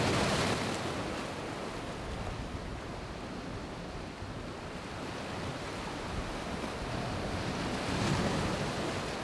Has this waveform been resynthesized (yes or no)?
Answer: no